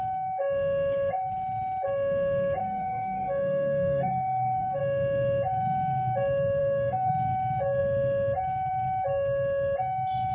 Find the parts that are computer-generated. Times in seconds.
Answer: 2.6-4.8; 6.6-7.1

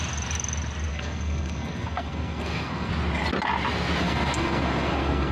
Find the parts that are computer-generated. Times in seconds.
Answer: 0.9-2.9; 4.0-5.3

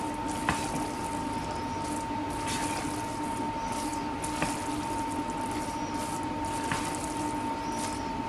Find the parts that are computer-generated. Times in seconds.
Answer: none

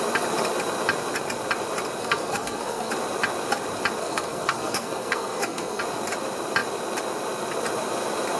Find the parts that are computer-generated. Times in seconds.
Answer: 2.0-2.9; 4.0-5.8

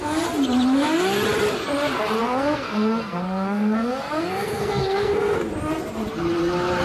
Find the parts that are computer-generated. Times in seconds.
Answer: 2.2-5.4

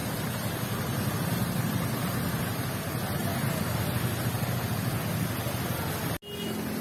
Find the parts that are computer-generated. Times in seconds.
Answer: none

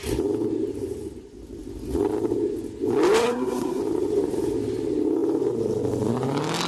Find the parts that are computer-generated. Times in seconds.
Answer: 3.2-3.8